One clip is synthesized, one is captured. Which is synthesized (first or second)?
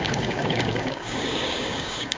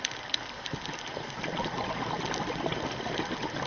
first